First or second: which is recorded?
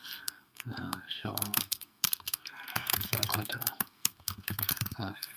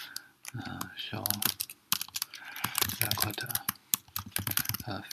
second